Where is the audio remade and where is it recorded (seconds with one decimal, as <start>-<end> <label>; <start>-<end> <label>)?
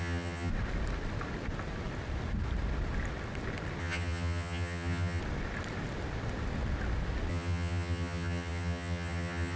0.0-0.5 remade; 0.5-3.8 recorded; 3.8-5.2 remade; 5.2-7.3 recorded; 7.3-9.6 remade